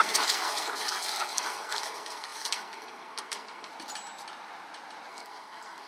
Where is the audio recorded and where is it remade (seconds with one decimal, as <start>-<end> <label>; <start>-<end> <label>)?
0.0-3.7 remade; 3.7-5.1 recorded; 5.1-5.9 remade